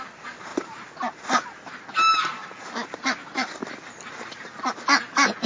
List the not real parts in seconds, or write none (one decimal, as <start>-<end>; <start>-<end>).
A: none